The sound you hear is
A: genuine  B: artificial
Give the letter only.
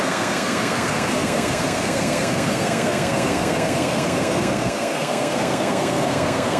B